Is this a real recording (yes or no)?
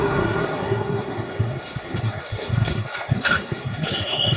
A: no